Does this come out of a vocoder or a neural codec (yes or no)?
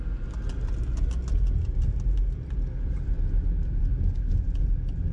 no